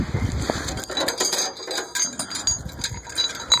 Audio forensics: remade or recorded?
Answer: recorded